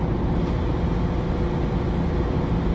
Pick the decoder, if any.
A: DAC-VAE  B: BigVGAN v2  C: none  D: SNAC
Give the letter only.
C